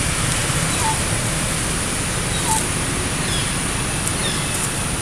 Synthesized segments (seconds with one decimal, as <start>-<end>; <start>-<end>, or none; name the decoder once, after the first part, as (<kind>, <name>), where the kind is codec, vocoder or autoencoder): none